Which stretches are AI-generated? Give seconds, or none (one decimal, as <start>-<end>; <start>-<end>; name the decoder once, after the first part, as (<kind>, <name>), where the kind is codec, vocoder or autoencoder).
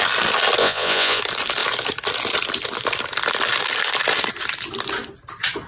0.6-1.2 (vocoder, Vocos)